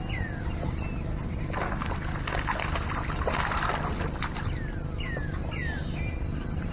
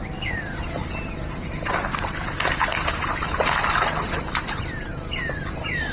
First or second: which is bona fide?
first